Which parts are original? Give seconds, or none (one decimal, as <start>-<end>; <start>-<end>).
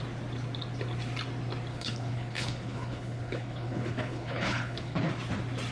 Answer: 0.0-1.7; 5.1-5.7